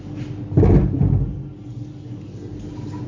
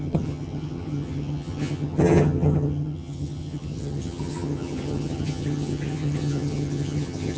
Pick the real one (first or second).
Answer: first